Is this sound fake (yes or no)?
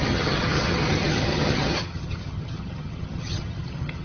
yes